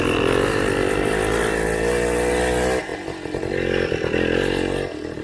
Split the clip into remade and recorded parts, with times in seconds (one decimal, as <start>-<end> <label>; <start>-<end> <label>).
0.0-5.2 recorded